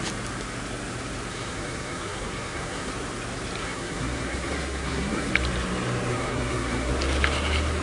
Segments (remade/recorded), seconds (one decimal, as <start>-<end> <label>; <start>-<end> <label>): 0.0-1.3 recorded; 1.3-2.9 remade; 2.9-3.6 recorded; 3.6-5.3 remade; 5.3-6.1 recorded; 6.1-6.9 remade; 6.9-7.8 recorded